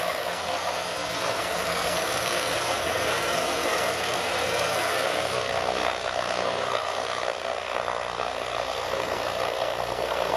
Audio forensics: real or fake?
fake